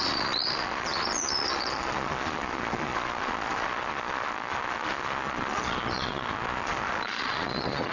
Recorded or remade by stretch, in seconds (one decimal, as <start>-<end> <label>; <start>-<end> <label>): 0.0-7.9 remade